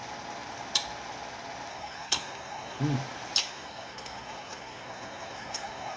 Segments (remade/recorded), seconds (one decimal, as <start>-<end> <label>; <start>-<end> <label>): 0.0-1.7 recorded; 1.7-2.8 remade; 2.8-3.4 recorded; 3.4-6.0 remade